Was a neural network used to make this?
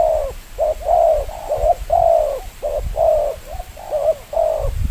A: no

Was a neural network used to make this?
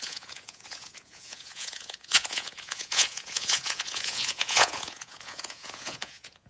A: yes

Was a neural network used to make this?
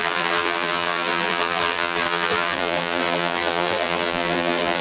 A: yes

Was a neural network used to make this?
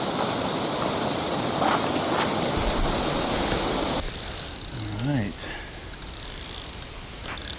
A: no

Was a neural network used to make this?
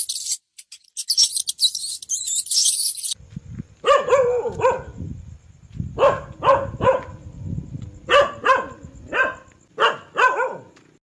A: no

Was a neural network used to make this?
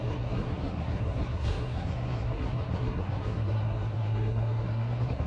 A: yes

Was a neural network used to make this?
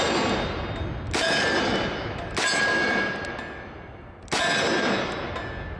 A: no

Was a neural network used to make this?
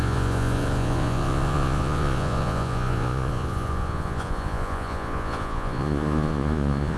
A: yes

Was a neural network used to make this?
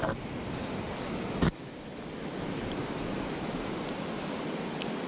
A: no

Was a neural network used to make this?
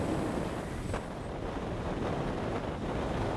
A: no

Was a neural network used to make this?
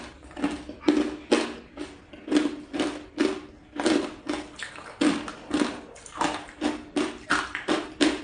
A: no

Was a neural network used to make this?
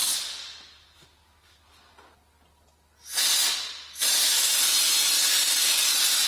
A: no